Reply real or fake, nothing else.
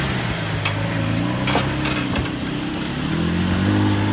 real